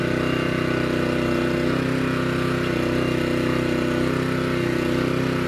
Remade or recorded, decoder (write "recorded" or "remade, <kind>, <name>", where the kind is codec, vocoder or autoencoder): recorded